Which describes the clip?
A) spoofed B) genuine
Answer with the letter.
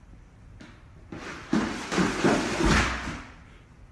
B